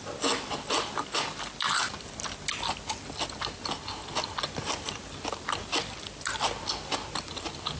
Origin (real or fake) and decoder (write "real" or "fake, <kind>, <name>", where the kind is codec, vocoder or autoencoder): real